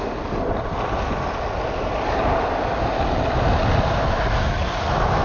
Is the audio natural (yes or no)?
yes